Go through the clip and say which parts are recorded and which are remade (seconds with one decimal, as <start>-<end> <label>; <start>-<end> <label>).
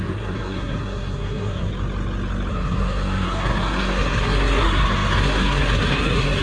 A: 0.0-1.7 remade; 1.7-2.5 recorded; 2.5-6.4 remade